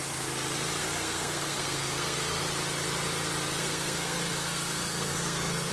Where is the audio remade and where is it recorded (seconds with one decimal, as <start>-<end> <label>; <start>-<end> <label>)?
0.0-0.8 recorded; 0.8-2.4 remade; 2.4-3.5 recorded; 3.5-5.7 remade